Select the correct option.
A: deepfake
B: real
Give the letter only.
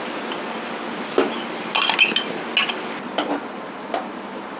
B